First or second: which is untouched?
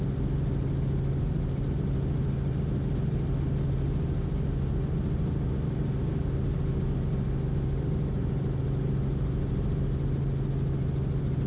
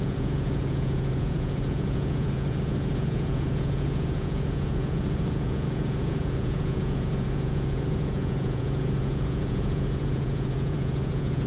first